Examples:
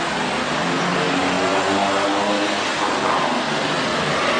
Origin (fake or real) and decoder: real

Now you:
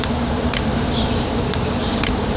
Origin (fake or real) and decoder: fake, vocoder, BigVGAN v2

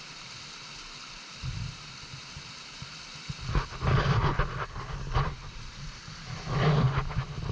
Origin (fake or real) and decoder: real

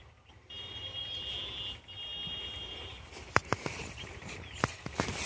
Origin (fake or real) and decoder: real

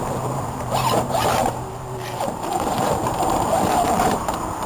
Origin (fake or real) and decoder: fake, vocoder, BigVGAN v2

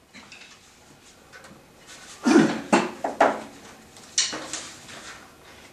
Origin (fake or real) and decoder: real